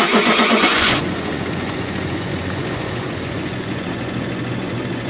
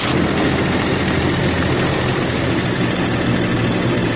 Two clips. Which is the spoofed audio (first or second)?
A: first